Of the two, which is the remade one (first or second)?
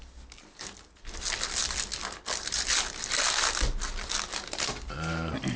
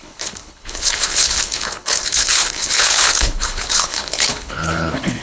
second